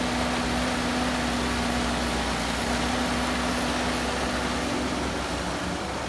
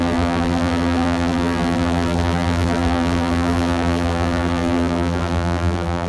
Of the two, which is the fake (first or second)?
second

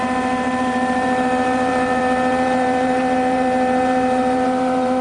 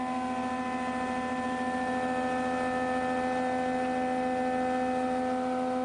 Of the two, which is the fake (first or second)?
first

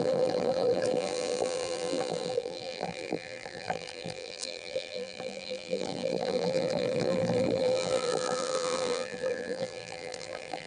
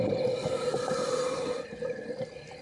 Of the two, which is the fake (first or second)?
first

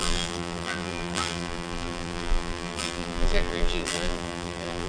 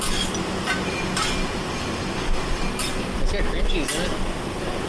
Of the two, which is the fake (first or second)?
first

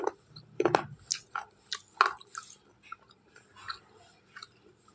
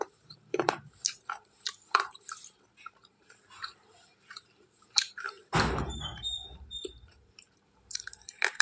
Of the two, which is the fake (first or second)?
second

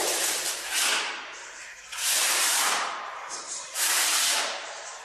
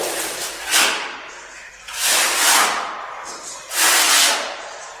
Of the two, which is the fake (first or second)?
first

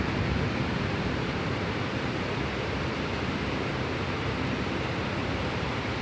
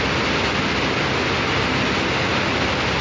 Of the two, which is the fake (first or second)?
first